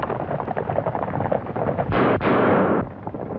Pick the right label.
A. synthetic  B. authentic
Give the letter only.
B